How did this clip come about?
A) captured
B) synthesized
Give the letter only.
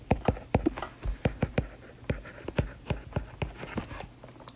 A